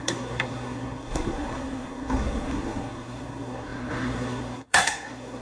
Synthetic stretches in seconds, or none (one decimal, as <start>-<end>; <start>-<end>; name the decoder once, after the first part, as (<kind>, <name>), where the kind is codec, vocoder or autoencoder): 0.0-5.4 (codec, SNAC)